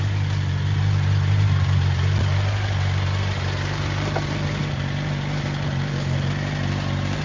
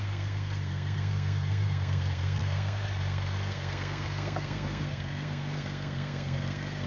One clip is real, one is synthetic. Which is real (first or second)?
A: first